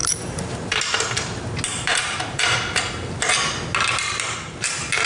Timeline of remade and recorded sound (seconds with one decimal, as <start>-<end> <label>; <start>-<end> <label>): 0.0-0.8 remade; 0.8-1.7 recorded; 1.7-2.8 remade; 2.8-5.1 recorded